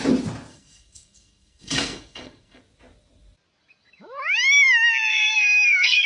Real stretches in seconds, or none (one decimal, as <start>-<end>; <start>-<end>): 0.0-0.5; 2.6-5.1